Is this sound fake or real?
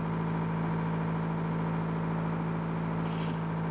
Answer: real